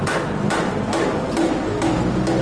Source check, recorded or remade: recorded